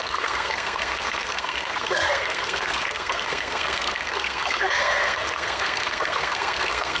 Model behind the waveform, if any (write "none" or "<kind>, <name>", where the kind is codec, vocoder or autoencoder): codec, SNAC